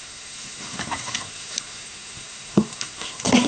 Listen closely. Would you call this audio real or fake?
fake